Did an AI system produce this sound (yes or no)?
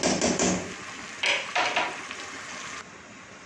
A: no